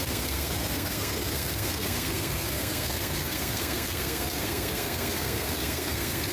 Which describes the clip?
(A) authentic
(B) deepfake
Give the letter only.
B